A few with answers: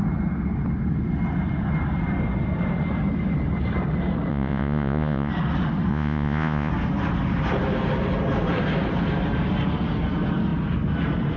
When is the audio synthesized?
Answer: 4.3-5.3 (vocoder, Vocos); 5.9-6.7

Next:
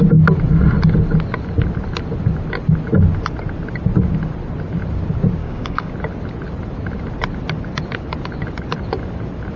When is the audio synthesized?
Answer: 5.4-5.9 (codec, DAC)

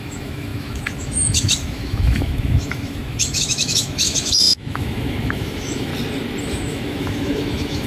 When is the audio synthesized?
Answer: 0.0-5.9 (autoencoder, DAC-VAE); 6.4-7.9

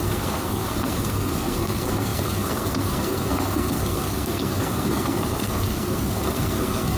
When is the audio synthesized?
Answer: 0.0-7.0 (codec, SNAC)

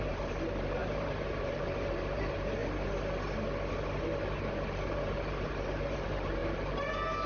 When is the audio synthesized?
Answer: 0.0-2.6 (vocoder, BigVGAN v2); 4.4-6.4

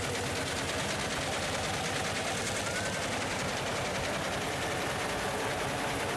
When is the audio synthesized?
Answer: none

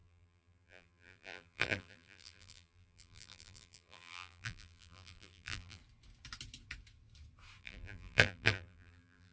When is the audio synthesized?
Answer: 0.0-5.8 (vocoder, BigVGAN v2); 7.6-9.3

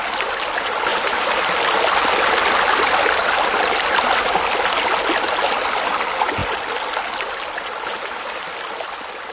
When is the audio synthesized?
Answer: none